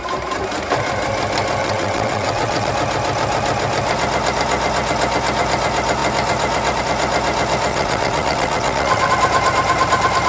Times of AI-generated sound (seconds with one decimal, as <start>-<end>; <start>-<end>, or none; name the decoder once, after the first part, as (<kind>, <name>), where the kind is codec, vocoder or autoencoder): 1.6-2.7 (vocoder, WaveNeXt); 7.7-9.1